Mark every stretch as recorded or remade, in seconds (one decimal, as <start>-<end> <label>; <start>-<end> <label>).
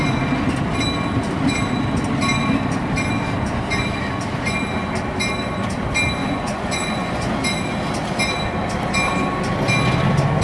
0.0-6.2 recorded; 6.2-7.3 remade; 7.3-10.4 recorded